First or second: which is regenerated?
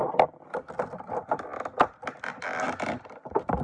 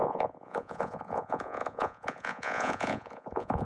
second